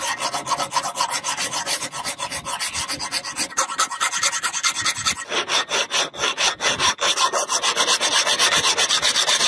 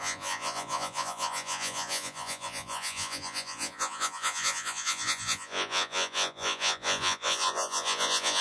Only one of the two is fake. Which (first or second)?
second